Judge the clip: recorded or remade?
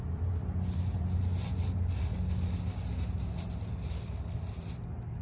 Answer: recorded